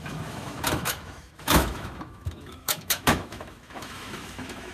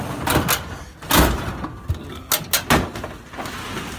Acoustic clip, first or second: second